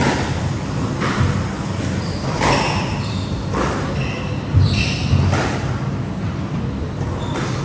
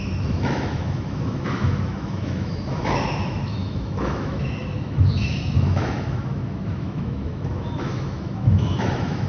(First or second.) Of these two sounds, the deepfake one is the second